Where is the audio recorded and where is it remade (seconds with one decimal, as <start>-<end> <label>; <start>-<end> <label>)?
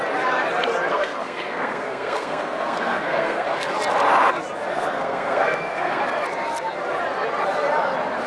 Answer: 0.0-0.9 recorded; 0.9-3.7 remade; 3.7-4.7 recorded; 4.7-6.0 remade; 6.0-8.3 recorded